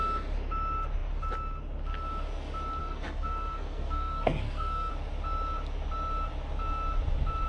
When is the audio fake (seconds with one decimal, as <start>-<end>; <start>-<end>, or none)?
2.8-4.9